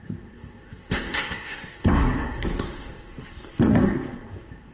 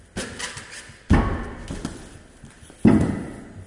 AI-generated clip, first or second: first